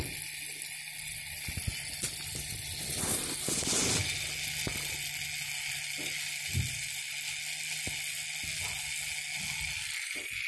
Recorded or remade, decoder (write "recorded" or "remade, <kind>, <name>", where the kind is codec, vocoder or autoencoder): recorded